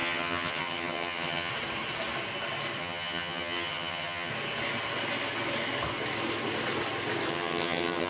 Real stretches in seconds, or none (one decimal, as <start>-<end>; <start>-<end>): 1.5-2.8; 4.3-7.3